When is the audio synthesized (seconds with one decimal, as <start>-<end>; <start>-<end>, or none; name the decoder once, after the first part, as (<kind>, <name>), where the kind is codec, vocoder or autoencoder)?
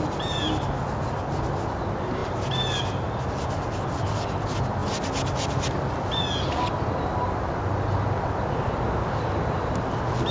none